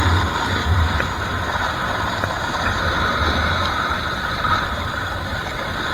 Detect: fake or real real